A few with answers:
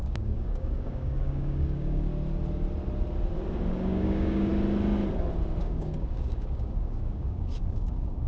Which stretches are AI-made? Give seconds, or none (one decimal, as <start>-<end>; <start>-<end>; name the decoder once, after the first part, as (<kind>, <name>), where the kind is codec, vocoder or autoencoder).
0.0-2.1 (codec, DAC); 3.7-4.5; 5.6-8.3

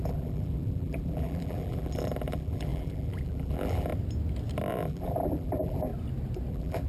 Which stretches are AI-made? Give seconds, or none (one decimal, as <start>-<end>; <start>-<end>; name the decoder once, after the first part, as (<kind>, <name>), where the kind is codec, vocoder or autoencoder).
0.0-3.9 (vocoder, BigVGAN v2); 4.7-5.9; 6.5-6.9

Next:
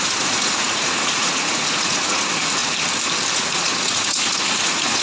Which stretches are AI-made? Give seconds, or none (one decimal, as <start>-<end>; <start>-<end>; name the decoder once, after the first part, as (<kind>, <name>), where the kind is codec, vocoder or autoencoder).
0.0-2.6 (vocoder, Vocos); 3.3-5.0

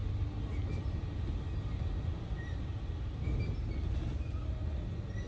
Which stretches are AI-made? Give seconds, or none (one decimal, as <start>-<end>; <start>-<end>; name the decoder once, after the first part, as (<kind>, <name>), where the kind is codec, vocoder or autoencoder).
none

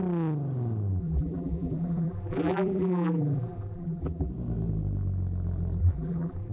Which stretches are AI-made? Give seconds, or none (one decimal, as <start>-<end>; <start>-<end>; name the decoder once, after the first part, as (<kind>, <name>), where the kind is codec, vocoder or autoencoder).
1.0-4.3 (vocoder, BigVGAN v2); 5.8-6.5

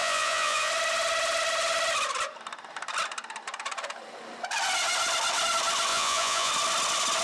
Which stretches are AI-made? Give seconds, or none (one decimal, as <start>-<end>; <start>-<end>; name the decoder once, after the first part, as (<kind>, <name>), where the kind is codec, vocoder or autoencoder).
0.0-0.7 (vocoder, Vocos); 5.9-6.5